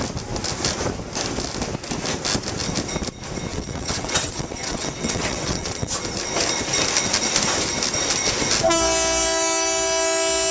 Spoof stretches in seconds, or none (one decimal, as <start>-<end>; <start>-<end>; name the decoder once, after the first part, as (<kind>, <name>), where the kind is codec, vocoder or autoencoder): 3.5-5.9 (vocoder, WaveNeXt)